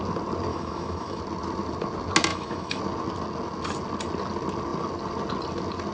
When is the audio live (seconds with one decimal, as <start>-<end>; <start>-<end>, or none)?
0.0-0.5; 1.2-2.3; 2.8-5.9

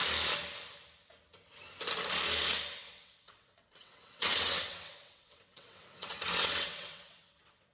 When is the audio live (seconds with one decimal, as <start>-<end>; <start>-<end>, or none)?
0.0-2.8